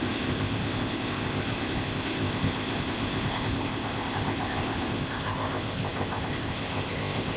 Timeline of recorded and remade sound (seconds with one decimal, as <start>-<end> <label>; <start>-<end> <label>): 0.0-7.4 remade